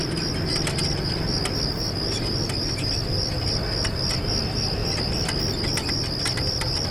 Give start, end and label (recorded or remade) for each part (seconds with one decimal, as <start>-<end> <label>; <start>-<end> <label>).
0.0-6.9 recorded